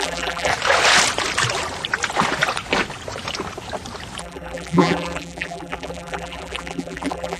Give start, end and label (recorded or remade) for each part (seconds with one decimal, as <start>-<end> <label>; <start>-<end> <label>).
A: 0.0-0.5 remade; 0.5-4.2 recorded; 4.2-7.4 remade